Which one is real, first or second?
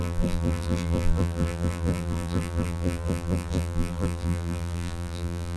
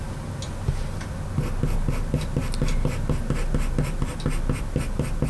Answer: second